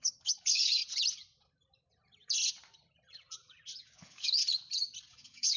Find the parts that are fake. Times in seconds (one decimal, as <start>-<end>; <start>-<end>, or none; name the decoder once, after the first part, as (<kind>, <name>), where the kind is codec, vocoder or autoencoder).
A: 0.0-0.8 (codec, DAC); 3.8-4.4; 5.1-5.6